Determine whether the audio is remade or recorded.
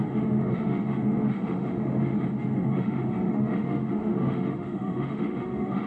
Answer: remade